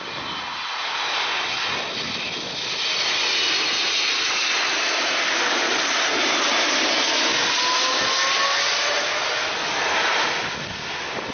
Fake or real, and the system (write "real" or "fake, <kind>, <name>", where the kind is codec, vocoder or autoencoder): real